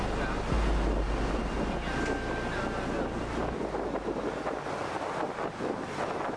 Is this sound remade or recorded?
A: recorded